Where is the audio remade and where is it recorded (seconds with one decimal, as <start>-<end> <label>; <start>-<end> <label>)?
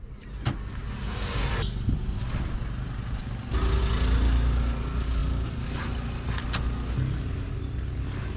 0.0-8.4 recorded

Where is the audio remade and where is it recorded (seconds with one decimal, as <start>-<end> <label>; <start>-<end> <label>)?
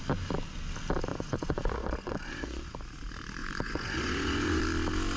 0.0-1.1 recorded; 1.1-2.7 remade; 2.7-3.4 recorded; 3.4-4.6 remade; 4.6-5.2 recorded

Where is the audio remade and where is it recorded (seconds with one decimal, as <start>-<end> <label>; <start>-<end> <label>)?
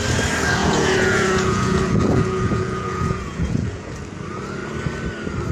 0.0-0.6 recorded; 0.6-3.9 remade; 3.9-5.5 recorded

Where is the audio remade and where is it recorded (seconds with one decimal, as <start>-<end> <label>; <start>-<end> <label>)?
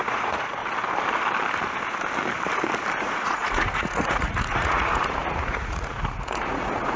0.0-0.6 remade; 0.6-3.0 recorded; 3.0-7.0 remade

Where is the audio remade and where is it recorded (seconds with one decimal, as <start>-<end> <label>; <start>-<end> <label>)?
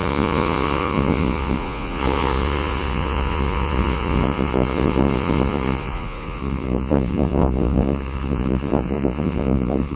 0.0-10.0 remade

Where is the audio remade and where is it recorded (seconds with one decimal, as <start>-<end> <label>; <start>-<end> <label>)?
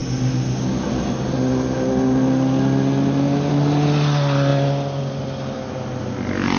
0.0-6.6 recorded